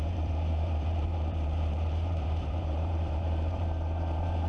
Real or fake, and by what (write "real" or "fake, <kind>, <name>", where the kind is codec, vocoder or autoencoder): fake, vocoder, BigVGAN v2